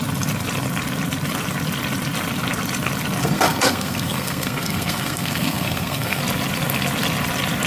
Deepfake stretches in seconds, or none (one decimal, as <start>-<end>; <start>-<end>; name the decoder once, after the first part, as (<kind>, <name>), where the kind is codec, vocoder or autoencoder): 3.2-6.2 (codec, SNAC)